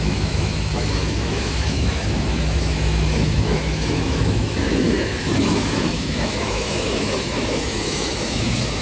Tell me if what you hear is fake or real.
fake